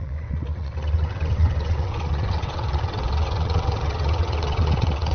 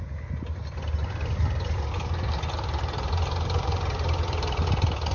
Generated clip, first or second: first